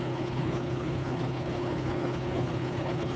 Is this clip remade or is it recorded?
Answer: remade